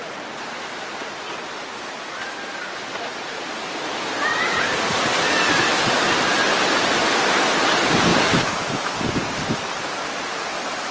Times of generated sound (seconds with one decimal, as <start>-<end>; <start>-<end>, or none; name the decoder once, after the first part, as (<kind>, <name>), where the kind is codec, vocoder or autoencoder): none